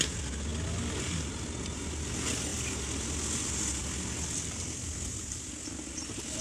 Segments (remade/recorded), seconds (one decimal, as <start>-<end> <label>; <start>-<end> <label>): 0.0-6.4 recorded